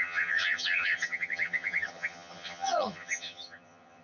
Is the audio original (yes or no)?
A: no